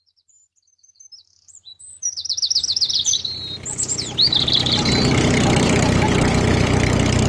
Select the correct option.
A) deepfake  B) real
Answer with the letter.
A